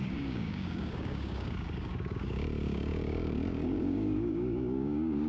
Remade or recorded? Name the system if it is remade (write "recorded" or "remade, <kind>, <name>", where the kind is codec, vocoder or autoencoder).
remade, codec, DAC